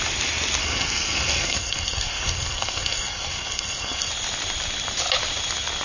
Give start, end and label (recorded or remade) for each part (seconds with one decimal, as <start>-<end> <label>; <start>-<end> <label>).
0.0-0.6 recorded; 0.6-4.1 remade; 4.1-5.8 recorded